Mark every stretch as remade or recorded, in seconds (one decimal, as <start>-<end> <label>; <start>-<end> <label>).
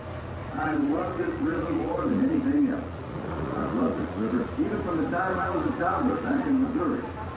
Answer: 0.0-0.4 recorded; 0.4-4.5 remade; 4.5-5.3 recorded; 5.3-6.8 remade; 6.8-7.4 recorded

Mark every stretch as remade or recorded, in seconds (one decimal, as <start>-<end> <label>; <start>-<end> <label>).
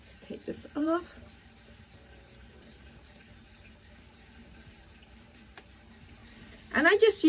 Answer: 0.0-6.2 remade; 6.2-7.3 recorded